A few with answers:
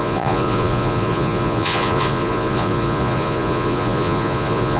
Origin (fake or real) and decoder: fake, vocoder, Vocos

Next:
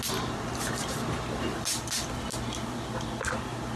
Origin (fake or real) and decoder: real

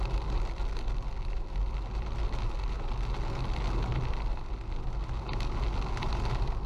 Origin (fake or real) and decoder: real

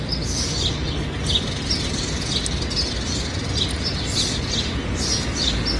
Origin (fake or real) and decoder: real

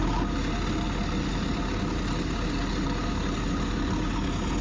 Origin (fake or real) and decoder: real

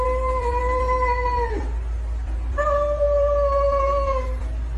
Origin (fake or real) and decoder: real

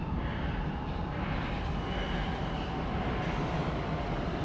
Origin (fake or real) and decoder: real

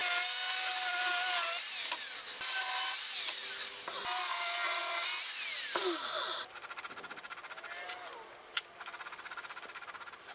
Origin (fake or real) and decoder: real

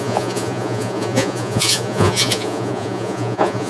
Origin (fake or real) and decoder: fake, vocoder, Vocos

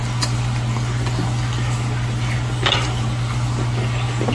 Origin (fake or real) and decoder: real